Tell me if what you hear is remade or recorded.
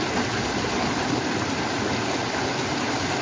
recorded